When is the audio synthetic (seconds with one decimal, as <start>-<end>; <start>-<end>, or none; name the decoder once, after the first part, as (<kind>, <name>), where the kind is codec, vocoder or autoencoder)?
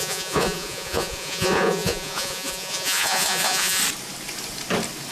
0.0-3.8 (vocoder, Vocos)